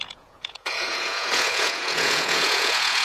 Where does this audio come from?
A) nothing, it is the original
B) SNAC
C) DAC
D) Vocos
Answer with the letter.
D